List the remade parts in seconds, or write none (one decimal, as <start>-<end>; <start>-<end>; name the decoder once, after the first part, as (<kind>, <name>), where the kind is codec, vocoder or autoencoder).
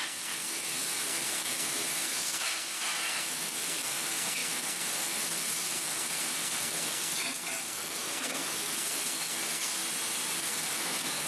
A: 0.0-9.8 (codec, SNAC); 10.4-11.3